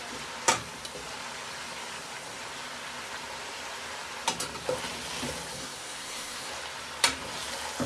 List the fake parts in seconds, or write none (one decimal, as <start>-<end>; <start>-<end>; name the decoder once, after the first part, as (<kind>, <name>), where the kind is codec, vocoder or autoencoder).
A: 5.5-6.5 (codec, SNAC)